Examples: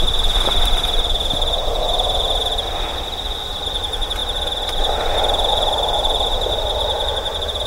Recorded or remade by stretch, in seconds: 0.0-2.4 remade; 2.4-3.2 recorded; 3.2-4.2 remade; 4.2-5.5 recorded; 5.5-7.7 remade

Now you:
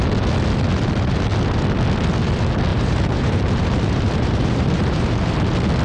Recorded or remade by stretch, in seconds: 0.0-2.7 recorded; 2.7-5.3 remade; 5.3-5.8 recorded

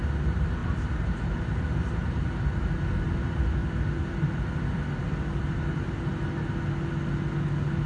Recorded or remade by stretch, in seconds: 0.0-0.6 recorded; 0.6-2.2 remade; 2.2-3.6 recorded; 3.6-4.5 remade; 4.5-7.9 recorded